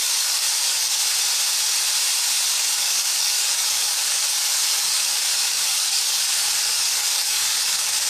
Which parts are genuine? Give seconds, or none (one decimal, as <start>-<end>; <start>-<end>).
1.0-2.5